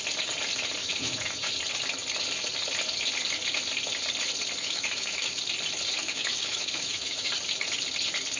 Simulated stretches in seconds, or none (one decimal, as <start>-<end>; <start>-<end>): 0.8-1.5; 4.6-5.4; 5.9-7.3